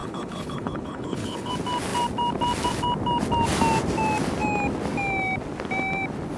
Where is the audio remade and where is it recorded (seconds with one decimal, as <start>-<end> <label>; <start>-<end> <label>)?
0.0-1.5 remade; 1.5-6.4 recorded